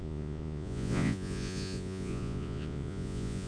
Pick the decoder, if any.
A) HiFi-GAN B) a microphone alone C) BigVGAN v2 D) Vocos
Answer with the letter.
D